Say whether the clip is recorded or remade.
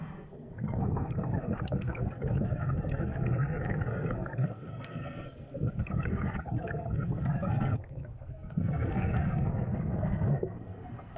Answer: remade